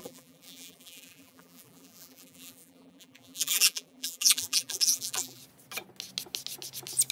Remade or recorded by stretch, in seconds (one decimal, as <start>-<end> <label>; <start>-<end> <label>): 0.0-5.4 remade; 5.4-7.1 recorded